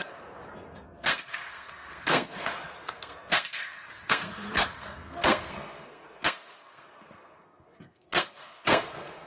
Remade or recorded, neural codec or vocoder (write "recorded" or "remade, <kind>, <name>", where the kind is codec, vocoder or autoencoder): remade, codec, SNAC